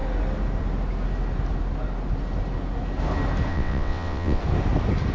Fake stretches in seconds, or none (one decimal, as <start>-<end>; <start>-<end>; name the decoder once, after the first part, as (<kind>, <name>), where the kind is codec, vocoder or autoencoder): 3.5-4.4 (vocoder, WaveNeXt)